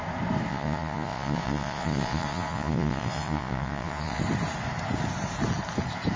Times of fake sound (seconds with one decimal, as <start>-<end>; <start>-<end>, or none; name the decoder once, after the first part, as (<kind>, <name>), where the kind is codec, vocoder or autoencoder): 0.5-4.2 (vocoder, Vocos)